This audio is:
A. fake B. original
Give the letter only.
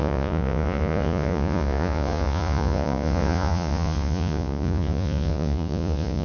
A